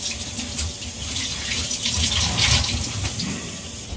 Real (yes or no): yes